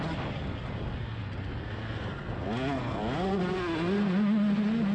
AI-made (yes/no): no